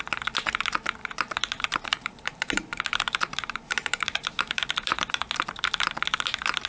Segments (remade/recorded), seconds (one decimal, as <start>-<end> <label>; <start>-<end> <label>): 0.0-1.0 recorded; 1.0-5.0 remade; 5.0-6.7 recorded